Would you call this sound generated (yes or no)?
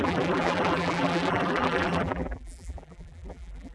yes